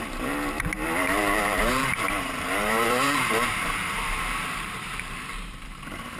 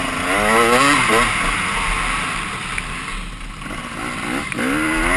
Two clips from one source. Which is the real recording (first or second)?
second